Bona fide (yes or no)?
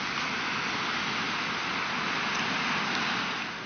yes